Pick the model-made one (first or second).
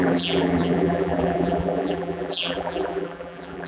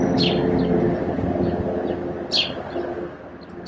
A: first